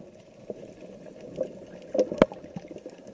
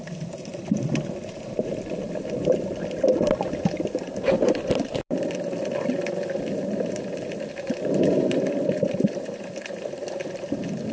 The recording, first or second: first